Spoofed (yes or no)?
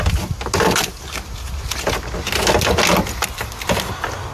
no